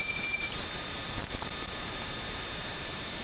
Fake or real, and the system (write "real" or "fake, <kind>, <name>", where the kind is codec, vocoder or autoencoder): fake, vocoder, BigVGAN v2